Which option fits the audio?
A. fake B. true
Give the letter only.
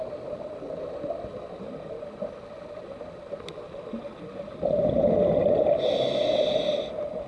B